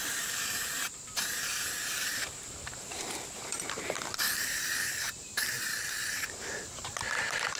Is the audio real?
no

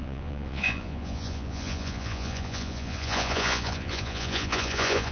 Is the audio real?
no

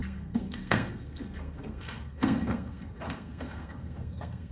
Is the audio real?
no